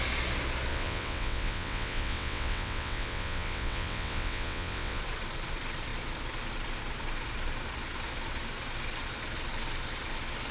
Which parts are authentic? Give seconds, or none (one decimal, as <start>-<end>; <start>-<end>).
0.0-0.7; 5.0-10.5